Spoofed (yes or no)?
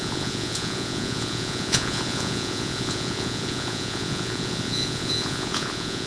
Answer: yes